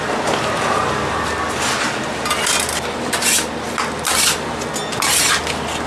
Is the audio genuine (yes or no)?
yes